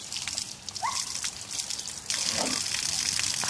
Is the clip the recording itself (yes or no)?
yes